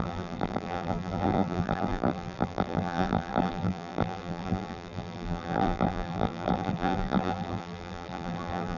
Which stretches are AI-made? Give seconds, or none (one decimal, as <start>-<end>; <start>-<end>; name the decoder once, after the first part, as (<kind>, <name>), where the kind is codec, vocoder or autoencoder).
0.0-8.8 (vocoder, BigVGAN v2)